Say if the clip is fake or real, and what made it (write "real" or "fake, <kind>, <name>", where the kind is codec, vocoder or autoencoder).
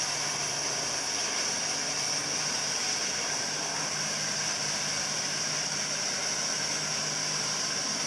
real